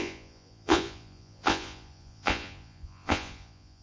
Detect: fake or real fake